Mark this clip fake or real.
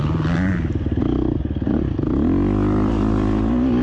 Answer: real